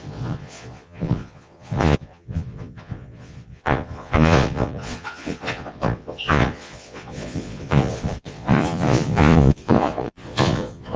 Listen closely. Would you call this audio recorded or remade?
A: remade